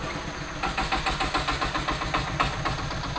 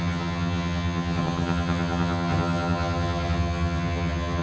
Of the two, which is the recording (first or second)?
first